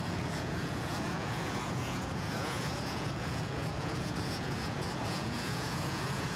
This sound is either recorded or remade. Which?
remade